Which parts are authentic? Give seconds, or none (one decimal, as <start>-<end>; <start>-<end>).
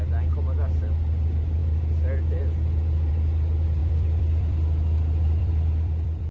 0.0-3.8